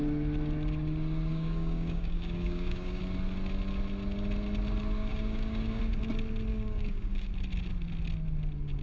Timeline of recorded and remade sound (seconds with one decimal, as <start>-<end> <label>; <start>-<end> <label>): 0.0-1.3 recorded; 1.3-3.0 remade; 3.0-5.1 recorded; 5.1-5.8 remade; 5.8-6.5 recorded; 6.5-7.3 remade; 7.3-8.8 recorded